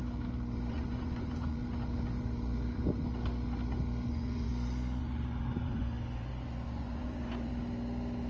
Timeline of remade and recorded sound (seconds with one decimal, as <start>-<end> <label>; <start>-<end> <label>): 0.0-0.7 recorded; 0.7-1.6 remade; 1.6-4.1 recorded; 4.1-4.5 remade; 4.5-5.0 recorded; 5.0-7.5 remade; 7.5-8.3 recorded

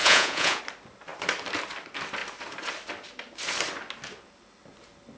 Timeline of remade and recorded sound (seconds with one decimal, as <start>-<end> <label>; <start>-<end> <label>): 0.0-0.6 remade; 0.6-5.2 recorded

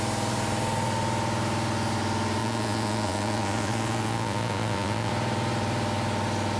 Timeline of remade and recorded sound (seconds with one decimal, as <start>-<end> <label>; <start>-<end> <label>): 0.0-2.4 recorded; 2.4-5.1 remade; 5.1-6.6 recorded

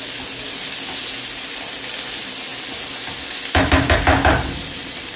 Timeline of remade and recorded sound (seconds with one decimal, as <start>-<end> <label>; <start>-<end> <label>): 0.0-5.2 recorded